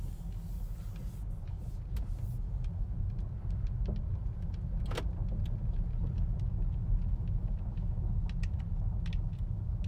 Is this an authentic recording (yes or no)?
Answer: yes